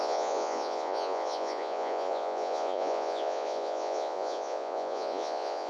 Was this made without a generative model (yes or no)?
no